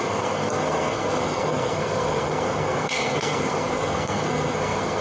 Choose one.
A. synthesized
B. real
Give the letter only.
A